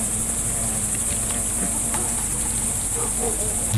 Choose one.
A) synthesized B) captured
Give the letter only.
B